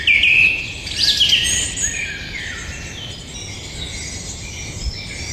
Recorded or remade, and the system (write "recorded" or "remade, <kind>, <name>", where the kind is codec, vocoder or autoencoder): recorded